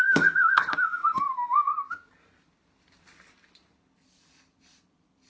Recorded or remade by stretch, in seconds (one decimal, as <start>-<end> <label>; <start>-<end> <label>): 0.0-1.7 remade; 1.7-5.3 recorded